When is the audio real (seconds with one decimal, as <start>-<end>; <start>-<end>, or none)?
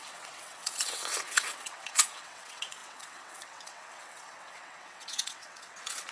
none